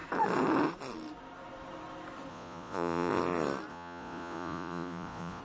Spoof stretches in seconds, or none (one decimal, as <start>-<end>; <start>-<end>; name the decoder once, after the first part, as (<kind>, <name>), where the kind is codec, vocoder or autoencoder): 2.3-3.1 (vocoder, Vocos); 3.7-5.4